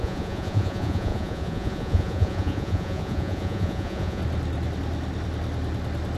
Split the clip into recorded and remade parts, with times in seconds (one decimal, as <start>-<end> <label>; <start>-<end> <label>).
0.0-4.2 remade; 4.2-6.2 recorded